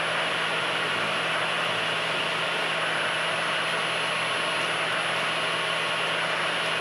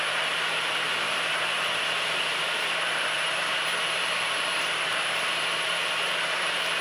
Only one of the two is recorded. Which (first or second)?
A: first